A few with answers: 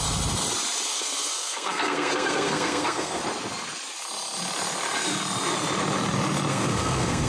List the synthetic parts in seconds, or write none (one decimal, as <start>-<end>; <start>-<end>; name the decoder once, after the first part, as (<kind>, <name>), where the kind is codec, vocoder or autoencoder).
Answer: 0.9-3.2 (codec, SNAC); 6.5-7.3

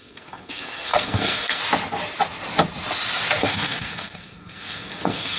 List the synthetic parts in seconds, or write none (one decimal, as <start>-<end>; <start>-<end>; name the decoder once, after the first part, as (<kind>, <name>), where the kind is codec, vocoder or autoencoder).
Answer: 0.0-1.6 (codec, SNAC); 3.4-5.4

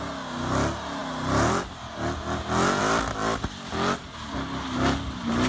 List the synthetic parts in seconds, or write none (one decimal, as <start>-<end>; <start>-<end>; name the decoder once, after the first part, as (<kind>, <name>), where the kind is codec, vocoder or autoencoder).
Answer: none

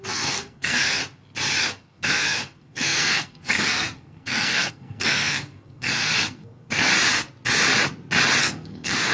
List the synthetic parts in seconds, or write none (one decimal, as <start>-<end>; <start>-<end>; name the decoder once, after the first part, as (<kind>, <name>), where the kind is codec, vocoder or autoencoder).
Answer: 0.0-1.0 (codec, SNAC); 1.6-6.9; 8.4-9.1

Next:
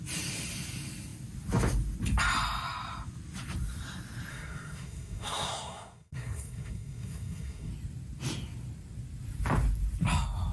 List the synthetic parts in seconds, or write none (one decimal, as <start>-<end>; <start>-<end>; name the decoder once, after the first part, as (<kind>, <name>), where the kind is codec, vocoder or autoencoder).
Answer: 4.3-7.7 (codec, SNAC)

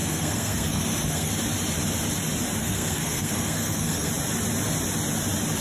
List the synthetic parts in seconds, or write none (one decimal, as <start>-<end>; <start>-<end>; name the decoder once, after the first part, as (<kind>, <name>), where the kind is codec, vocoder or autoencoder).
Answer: 0.0-1.3 (codec, SNAC); 2.6-4.1